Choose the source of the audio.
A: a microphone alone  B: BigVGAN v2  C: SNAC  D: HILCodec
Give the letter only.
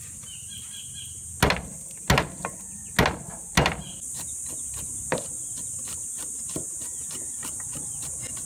A